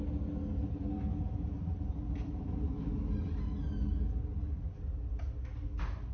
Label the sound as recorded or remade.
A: recorded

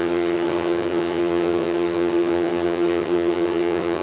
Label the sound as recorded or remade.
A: remade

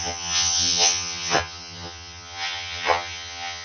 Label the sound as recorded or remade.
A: remade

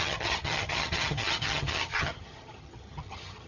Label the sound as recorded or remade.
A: remade